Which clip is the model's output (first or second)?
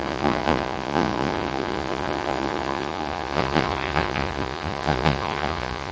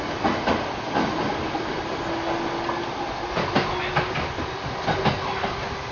first